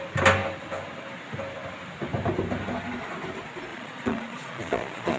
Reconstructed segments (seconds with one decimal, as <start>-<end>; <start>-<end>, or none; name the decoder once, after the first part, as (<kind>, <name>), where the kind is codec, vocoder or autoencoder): 3.7-5.2 (vocoder, Vocos)